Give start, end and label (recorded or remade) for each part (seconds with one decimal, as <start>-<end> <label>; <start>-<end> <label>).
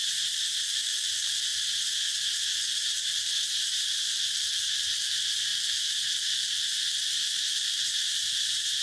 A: 0.0-1.5 remade; 1.5-2.1 recorded; 2.1-8.8 remade